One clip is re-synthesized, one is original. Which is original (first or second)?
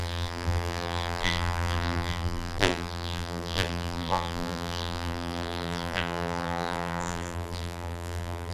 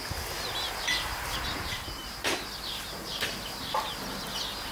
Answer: second